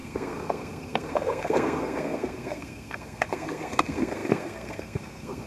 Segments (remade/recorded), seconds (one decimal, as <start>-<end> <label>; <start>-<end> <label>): 0.0-5.5 remade

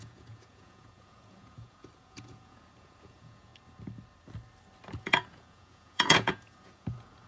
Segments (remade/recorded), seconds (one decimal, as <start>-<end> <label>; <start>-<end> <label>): 0.0-3.5 remade; 3.5-5.0 recorded; 5.0-7.3 remade

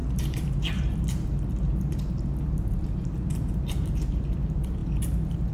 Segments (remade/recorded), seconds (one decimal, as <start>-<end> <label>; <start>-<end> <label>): 0.0-5.5 remade

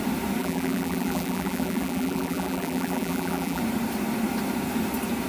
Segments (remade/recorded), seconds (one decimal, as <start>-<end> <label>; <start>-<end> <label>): 0.0-0.4 recorded; 0.4-3.6 remade; 3.6-5.3 recorded

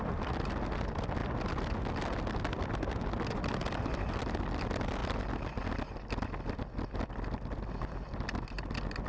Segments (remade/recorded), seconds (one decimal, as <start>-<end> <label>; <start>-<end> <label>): 0.0-9.1 recorded